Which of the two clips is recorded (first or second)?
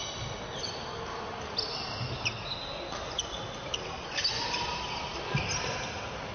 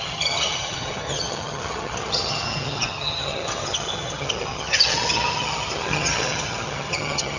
first